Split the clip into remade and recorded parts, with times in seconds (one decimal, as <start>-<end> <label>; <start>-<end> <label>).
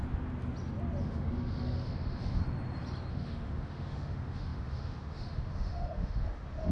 0.0-1.0 recorded; 1.0-2.4 remade; 2.4-3.1 recorded; 3.1-6.7 remade